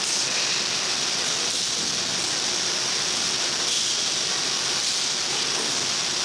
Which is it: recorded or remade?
recorded